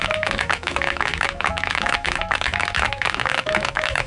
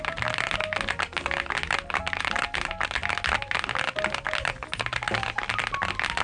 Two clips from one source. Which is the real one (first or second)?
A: second